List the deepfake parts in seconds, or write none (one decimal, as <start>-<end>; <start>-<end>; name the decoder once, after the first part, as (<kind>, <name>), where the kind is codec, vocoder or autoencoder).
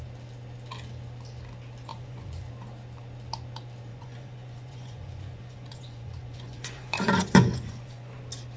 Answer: 1.9-2.5 (vocoder, Vocos); 3.9-8.2